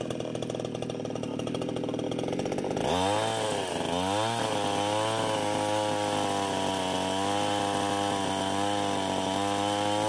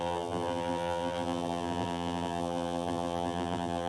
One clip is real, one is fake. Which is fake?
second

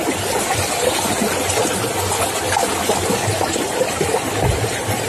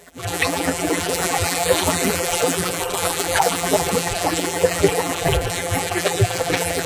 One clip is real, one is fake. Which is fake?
second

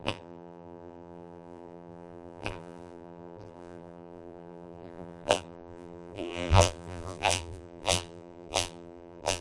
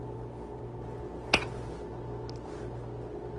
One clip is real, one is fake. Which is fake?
first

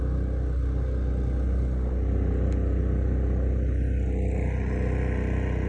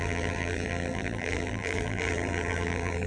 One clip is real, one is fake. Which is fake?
second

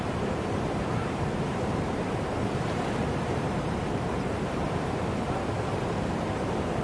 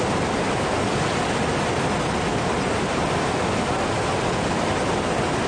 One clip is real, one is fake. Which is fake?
first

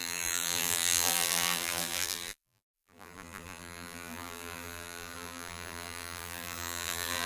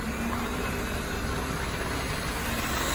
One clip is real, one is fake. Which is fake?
first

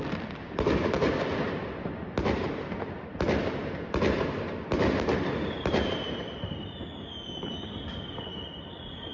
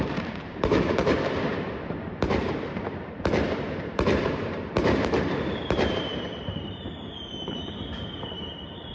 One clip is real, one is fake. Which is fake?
second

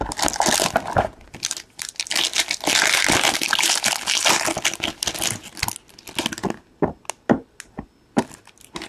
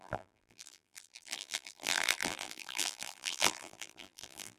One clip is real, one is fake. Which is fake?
second